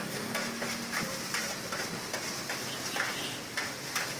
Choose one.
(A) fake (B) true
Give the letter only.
B